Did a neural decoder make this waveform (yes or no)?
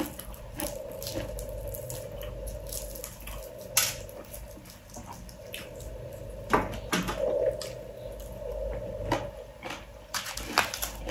no